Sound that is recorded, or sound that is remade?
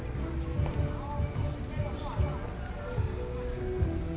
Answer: recorded